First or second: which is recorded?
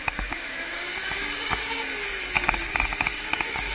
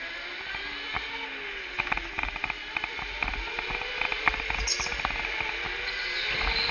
second